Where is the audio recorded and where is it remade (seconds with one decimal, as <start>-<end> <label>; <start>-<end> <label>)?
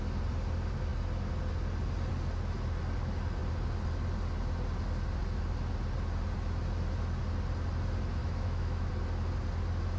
0.0-8.2 recorded; 8.2-8.9 remade; 8.9-10.0 recorded